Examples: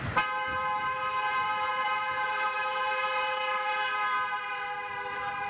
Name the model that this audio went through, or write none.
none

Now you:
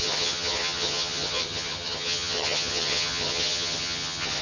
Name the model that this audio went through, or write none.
vocoder, HiFi-GAN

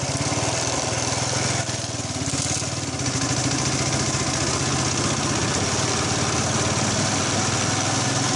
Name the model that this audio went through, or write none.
none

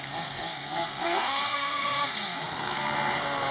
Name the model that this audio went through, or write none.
codec, SNAC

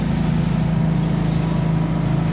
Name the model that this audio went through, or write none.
none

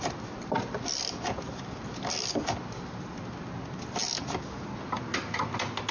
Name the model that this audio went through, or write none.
none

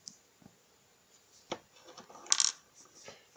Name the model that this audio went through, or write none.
none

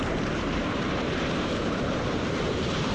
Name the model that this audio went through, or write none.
vocoder, BigVGAN v2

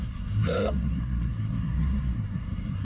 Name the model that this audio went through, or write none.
codec, SNAC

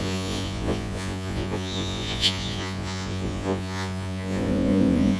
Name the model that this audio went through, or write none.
vocoder, Vocos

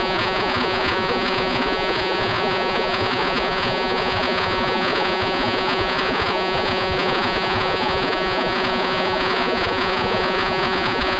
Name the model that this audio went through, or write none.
vocoder, Vocos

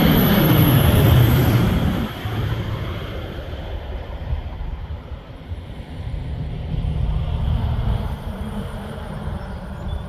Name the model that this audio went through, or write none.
vocoder, BigVGAN v2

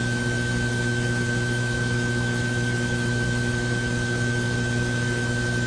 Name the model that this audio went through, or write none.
autoencoder, DAC-VAE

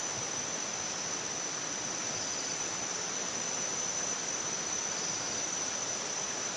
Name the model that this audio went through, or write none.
none